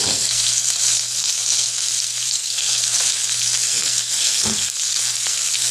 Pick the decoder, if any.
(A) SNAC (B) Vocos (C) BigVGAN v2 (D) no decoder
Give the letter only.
A